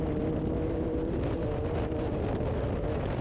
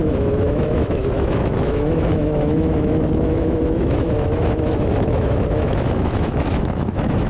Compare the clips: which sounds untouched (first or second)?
first